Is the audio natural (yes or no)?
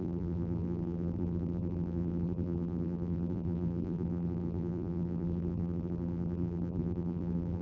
no